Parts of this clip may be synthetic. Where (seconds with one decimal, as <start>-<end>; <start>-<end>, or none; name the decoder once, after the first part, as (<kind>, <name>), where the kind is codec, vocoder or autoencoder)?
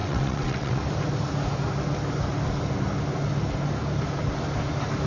0.0-0.8 (vocoder, WaveNeXt)